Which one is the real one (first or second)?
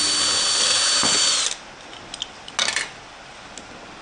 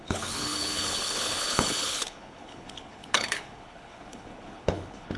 first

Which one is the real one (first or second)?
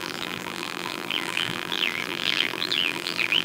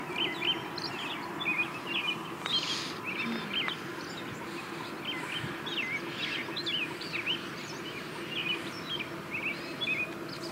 second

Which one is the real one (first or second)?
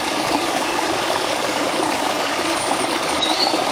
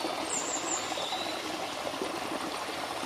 second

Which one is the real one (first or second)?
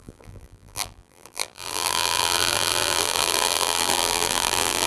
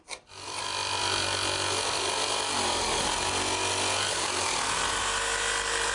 second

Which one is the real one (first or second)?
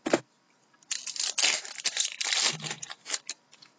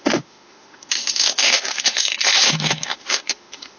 first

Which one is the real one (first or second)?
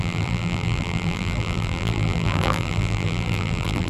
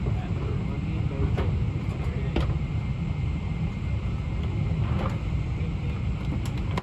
second